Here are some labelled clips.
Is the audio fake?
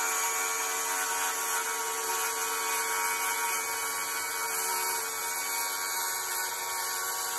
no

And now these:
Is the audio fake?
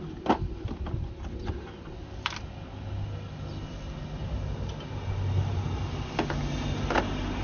no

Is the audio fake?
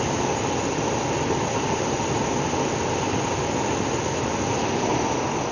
no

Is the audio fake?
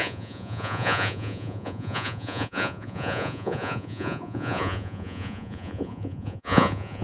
yes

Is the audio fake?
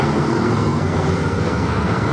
yes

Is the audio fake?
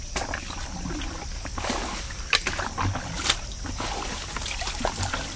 no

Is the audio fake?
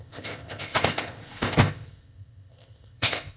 yes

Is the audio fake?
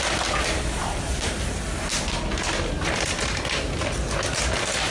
no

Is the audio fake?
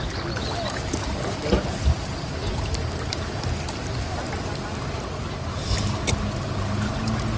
no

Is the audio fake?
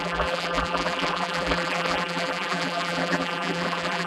yes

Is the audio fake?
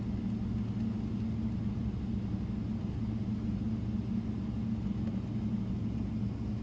no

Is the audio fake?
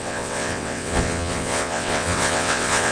yes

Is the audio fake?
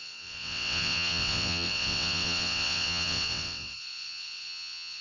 yes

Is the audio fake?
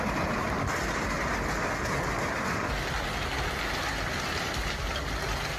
no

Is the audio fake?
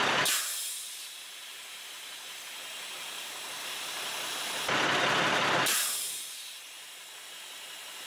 no